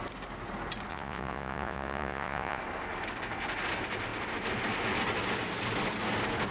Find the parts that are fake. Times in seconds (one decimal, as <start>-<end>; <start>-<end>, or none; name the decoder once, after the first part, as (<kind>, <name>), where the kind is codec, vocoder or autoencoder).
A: 0.9-2.6 (vocoder, Vocos)